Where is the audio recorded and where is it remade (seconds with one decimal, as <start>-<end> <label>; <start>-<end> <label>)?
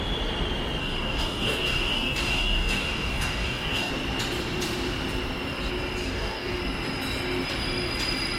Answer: 0.0-0.8 recorded; 0.8-3.9 remade; 3.9-6.0 recorded; 6.0-6.6 remade; 6.6-8.4 recorded